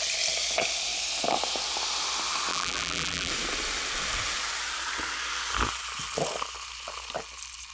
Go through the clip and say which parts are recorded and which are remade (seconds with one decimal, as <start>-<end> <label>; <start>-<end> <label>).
0.0-2.5 recorded; 2.5-3.3 remade; 3.3-7.7 recorded